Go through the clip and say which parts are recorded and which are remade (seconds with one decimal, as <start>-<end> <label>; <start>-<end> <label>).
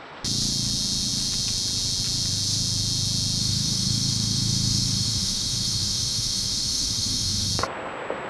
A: 0.0-3.4 recorded; 3.4-7.5 remade; 7.5-8.3 recorded